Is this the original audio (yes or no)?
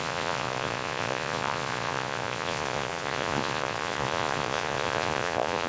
no